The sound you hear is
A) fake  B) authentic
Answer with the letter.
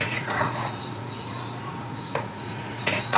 A